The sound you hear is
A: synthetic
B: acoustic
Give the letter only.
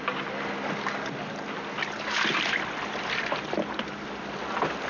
B